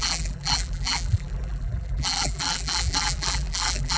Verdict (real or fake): fake